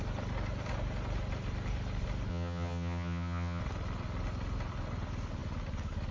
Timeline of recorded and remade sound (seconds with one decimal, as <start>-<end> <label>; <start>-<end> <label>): 0.0-2.3 recorded; 2.3-3.6 remade; 3.6-6.1 recorded